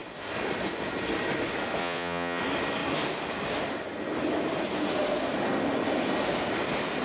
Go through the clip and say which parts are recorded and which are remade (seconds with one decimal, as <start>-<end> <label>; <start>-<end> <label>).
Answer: 0.0-1.8 recorded; 1.8-2.4 remade; 2.4-7.0 recorded